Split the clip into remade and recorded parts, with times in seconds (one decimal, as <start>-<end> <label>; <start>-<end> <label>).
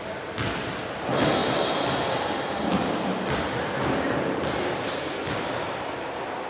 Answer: 0.0-6.5 recorded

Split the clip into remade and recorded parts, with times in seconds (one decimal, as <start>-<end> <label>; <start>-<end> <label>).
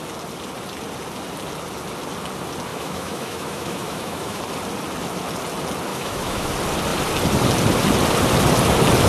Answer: 0.0-2.7 recorded; 2.7-4.4 remade; 4.4-5.9 recorded; 5.9-6.5 remade; 6.5-9.1 recorded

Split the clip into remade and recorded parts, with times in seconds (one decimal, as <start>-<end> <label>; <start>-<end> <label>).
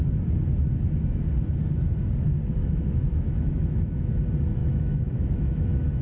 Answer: 0.0-2.6 recorded; 2.6-4.1 remade; 4.1-4.6 recorded; 4.6-6.0 remade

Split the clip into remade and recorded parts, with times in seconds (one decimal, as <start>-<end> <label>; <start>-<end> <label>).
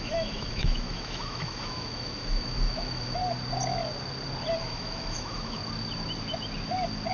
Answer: 0.0-3.2 remade; 3.2-4.6 recorded; 4.6-5.6 remade; 5.6-7.1 recorded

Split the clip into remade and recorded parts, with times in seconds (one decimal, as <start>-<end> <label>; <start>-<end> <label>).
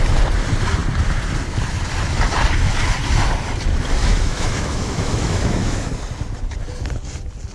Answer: 0.0-4.0 recorded; 4.0-5.9 remade; 5.9-7.5 recorded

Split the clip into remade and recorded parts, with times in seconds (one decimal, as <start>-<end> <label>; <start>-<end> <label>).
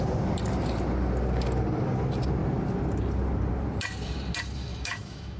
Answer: 0.0-4.7 recorded; 4.7-5.4 remade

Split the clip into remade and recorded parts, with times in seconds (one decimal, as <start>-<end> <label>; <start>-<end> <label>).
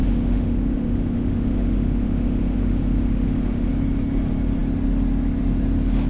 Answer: 0.0-3.7 remade; 3.7-6.1 recorded